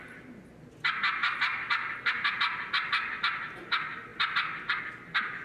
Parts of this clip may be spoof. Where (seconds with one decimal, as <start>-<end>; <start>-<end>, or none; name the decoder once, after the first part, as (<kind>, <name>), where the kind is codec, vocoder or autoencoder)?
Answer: none